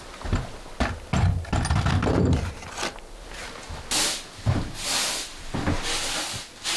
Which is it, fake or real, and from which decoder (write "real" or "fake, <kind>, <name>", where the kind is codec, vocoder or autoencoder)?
real